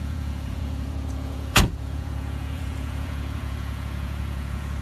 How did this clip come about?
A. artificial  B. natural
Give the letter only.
A